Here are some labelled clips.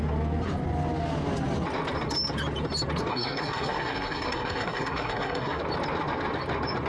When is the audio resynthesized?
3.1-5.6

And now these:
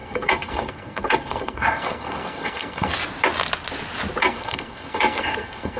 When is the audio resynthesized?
0.0-2.9; 4.2-5.8

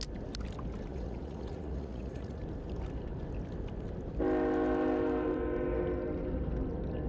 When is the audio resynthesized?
0.9-2.4

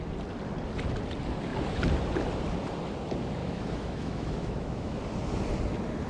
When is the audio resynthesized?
3.4-5.0

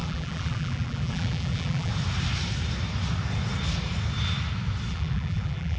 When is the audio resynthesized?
0.0-1.9; 4.9-5.8

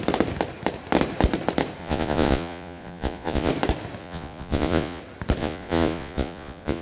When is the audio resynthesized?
1.8-3.5; 4.0-5.0; 5.4-6.8

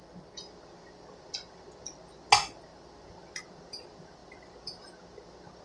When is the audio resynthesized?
none

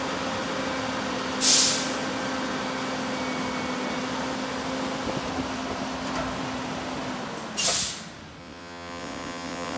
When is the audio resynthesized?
8.4-9.8